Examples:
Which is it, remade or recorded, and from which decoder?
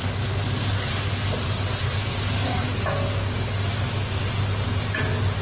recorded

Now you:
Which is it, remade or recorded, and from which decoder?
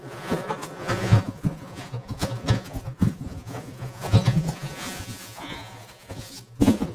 remade, vocoder, Vocos